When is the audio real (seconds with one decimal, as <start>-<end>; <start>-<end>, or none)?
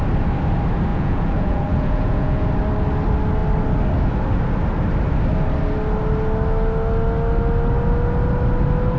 0.0-0.9; 2.5-9.0